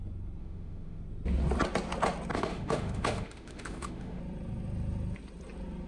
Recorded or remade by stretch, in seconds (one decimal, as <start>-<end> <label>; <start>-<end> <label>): 0.0-0.4 recorded; 0.4-1.0 remade; 1.0-2.3 recorded; 2.3-4.2 remade; 4.2-5.9 recorded